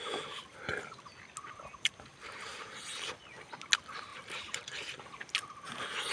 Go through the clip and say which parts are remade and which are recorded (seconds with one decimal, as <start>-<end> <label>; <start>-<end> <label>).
0.0-2.1 recorded; 2.1-2.6 remade; 2.6-4.1 recorded; 4.1-5.0 remade; 5.0-6.1 recorded